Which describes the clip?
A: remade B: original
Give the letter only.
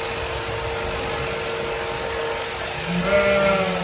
B